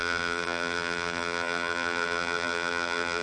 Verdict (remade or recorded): remade